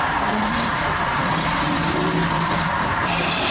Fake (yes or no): yes